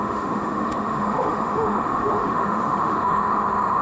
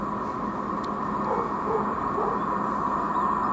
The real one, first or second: second